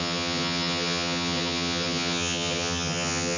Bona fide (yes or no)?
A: no